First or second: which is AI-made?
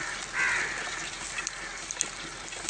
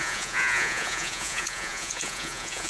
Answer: second